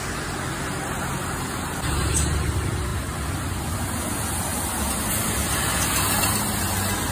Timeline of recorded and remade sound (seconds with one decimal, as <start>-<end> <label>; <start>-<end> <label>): 0.0-7.1 recorded